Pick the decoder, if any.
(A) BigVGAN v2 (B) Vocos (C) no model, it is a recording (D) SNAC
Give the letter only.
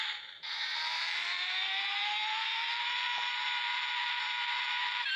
A